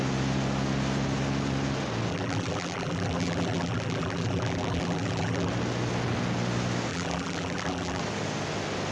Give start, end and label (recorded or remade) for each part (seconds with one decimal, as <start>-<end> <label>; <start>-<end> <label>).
0.0-2.1 recorded; 2.1-5.5 remade; 5.5-6.9 recorded; 6.9-8.0 remade; 8.0-8.9 recorded